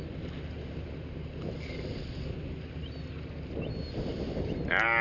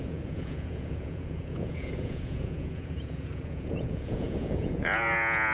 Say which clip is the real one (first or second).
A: first